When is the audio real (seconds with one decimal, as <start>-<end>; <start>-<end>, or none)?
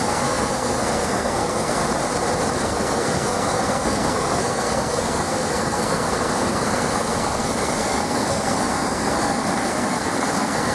1.8-2.6